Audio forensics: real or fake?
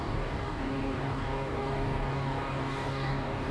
fake